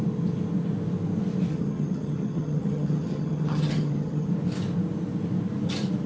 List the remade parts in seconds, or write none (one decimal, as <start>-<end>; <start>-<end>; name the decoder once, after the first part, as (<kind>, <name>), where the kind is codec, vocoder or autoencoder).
1.5-4.3 (vocoder, HiFi-GAN)